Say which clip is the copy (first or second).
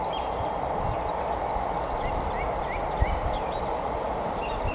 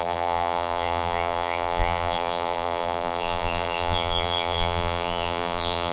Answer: second